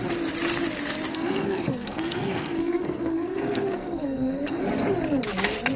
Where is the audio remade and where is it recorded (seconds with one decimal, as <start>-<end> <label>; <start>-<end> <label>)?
0.0-1.1 recorded; 1.1-4.6 remade; 4.6-5.8 recorded